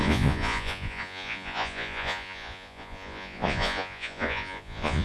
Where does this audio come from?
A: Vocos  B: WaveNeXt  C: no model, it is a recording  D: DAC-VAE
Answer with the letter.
A